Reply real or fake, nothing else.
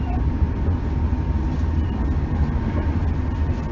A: real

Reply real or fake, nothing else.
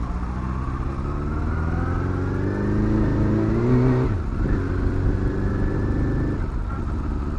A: real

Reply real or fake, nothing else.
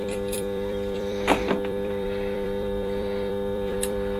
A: fake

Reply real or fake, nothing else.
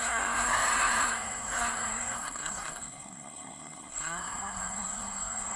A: fake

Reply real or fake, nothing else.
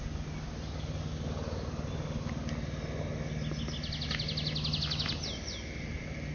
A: real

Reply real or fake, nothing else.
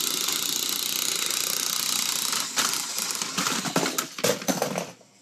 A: real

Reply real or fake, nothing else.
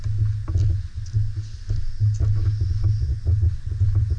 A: real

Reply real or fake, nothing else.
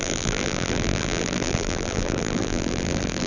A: fake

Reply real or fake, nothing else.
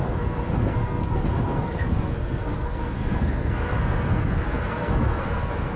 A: fake